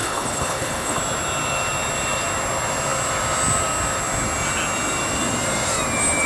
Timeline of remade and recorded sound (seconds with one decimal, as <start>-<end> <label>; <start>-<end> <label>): 0.0-1.0 remade; 1.0-6.3 recorded